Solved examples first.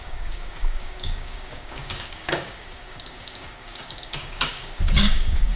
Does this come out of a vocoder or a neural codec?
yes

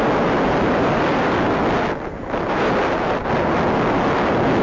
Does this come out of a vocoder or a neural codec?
no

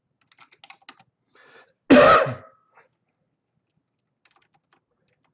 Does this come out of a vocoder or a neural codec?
no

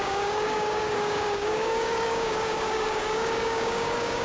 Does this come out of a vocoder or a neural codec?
yes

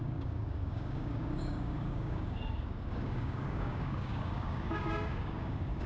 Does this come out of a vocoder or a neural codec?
yes